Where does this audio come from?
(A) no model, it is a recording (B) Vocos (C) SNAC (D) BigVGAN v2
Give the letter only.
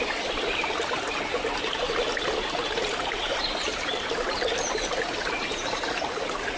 A